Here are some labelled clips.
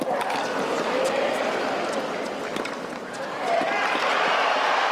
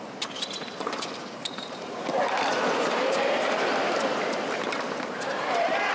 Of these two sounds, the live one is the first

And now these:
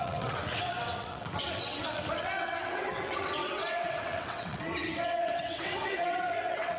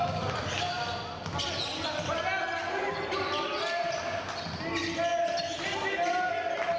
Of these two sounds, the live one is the second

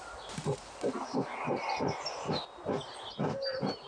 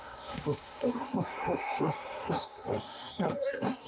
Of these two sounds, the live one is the first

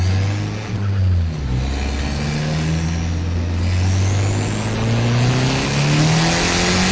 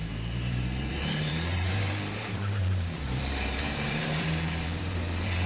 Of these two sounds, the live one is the first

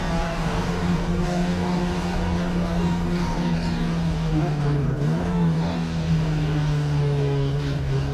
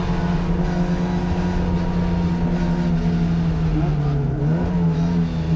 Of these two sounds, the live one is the second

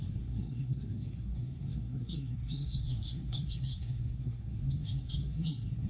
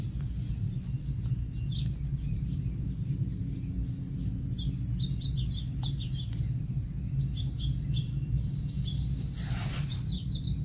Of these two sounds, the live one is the second